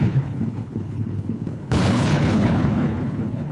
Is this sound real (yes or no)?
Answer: no